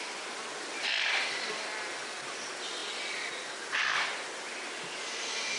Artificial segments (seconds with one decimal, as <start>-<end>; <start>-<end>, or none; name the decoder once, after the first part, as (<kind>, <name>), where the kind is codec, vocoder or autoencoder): none